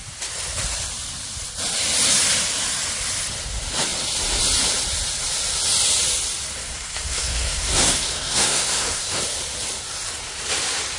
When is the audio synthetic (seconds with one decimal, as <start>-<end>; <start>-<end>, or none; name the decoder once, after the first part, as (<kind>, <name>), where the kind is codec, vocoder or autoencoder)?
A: 6.6-9.2 (codec, SNAC)